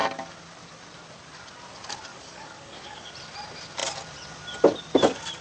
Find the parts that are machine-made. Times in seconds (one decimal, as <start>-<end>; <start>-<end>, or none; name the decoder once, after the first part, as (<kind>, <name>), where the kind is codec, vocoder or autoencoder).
2.1-3.1 (codec, DAC)